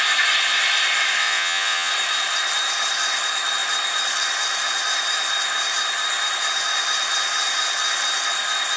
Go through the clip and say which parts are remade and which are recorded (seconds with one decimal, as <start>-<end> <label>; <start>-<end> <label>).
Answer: 0.0-1.2 recorded; 1.2-1.9 remade; 1.9-8.8 recorded